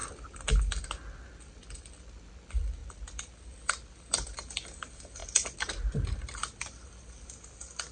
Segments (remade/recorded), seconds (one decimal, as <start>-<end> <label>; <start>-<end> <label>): 0.0-7.9 recorded